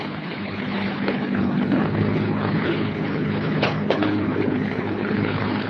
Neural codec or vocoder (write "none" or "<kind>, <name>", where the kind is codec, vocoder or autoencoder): codec, HILCodec